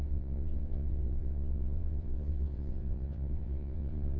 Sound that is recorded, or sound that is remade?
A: remade